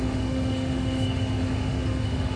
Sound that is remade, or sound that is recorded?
remade